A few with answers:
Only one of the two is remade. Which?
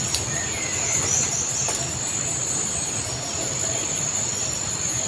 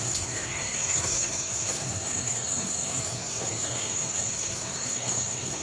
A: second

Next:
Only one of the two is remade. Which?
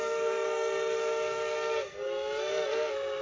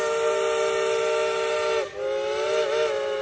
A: first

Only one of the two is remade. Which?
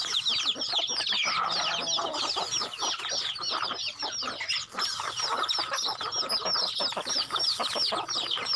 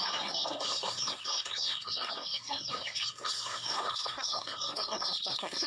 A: second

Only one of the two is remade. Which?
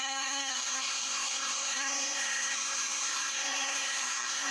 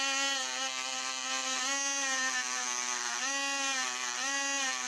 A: first